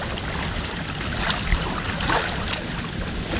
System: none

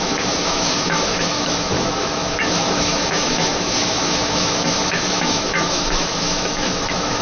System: autoencoder, DAC-VAE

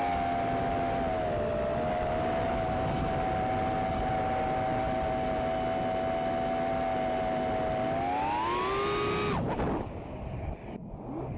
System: none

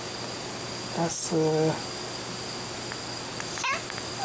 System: none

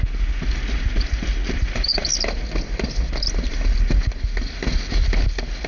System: none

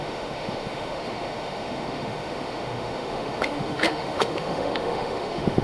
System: autoencoder, DAC-VAE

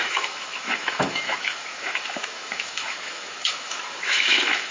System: autoencoder, DAC-VAE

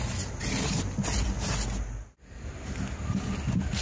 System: none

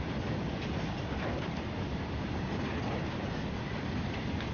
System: none